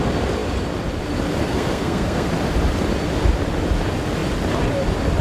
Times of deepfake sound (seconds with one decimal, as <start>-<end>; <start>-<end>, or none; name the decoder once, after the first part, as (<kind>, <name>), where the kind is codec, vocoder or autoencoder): 1.4-2.3 (codec, SNAC)